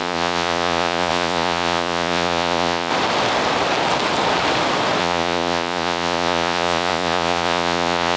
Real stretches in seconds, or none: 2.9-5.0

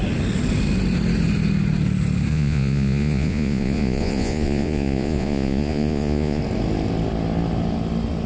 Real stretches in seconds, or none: 0.0-2.3; 6.4-8.3

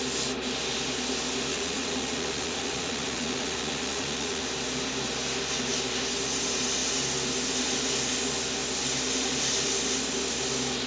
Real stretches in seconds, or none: 0.0-1.5; 4.4-10.9

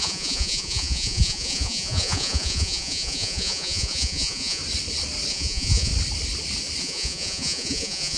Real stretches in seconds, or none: 4.6-5.3; 5.9-6.8

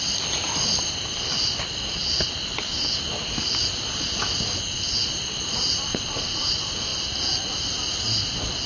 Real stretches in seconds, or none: 0.0-5.9; 6.5-8.7